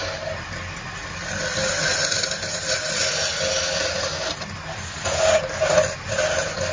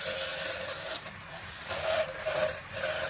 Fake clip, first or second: second